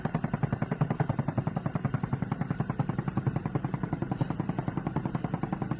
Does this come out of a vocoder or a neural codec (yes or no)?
no